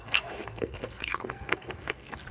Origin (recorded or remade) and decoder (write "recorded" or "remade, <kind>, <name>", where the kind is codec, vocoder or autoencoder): remade, codec, SNAC